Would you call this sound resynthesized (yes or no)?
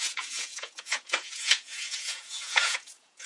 yes